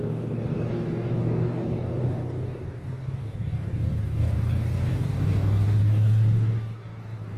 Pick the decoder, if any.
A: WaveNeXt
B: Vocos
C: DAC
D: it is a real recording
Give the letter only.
C